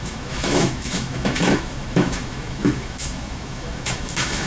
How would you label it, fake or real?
fake